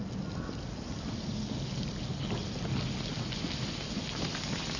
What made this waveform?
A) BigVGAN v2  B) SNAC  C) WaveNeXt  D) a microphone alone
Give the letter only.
D